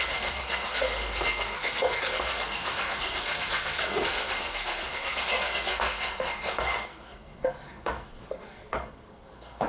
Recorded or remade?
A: remade